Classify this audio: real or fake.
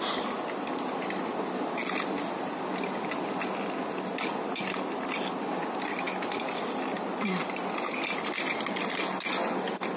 real